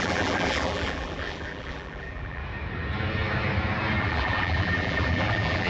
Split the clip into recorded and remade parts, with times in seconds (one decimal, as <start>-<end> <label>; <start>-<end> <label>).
0.0-2.4 remade; 2.4-4.0 recorded; 4.0-5.7 remade